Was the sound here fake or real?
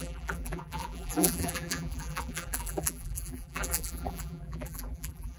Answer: fake